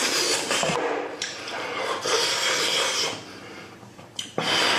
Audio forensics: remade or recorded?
remade